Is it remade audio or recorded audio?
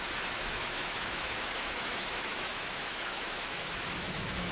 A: remade